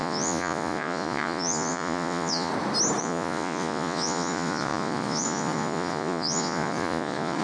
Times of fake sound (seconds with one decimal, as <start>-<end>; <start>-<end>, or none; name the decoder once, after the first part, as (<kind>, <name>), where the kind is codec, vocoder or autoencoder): 0.0-2.5 (vocoder, Vocos); 3.0-7.4